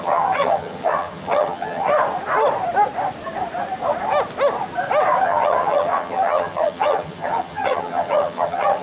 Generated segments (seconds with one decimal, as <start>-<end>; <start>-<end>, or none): 0.0-1.9; 5.2-8.8